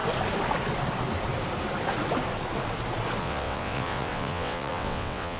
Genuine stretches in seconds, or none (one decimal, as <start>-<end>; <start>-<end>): 0.0-3.2